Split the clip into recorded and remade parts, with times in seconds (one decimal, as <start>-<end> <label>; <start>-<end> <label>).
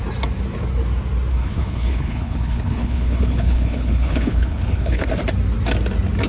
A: 0.0-1.3 recorded; 1.3-5.1 remade; 5.1-6.3 recorded